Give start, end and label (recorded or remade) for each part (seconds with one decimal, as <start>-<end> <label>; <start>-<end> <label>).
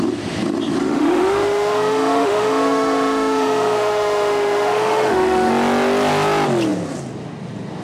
0.0-0.8 recorded; 0.8-5.5 remade; 5.5-7.8 recorded